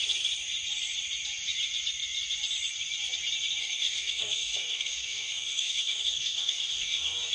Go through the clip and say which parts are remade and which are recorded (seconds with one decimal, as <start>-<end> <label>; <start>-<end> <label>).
0.0-3.6 recorded; 3.6-7.3 remade